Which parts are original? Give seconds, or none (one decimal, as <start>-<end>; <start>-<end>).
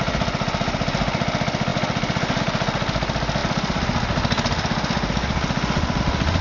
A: 0.0-6.4